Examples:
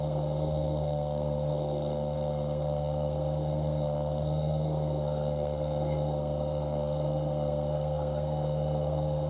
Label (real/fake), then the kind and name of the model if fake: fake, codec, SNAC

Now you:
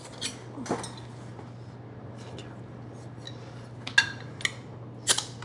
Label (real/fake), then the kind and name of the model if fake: real